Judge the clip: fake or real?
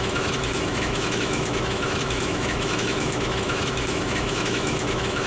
fake